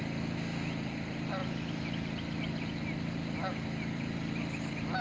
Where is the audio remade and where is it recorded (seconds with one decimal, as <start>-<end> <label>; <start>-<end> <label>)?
0.0-5.0 recorded